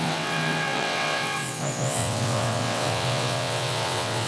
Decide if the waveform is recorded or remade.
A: remade